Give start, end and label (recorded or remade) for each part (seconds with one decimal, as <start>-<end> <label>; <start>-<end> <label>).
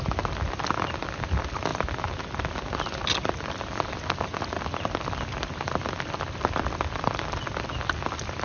0.0-8.4 recorded